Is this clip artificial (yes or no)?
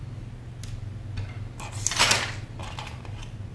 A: no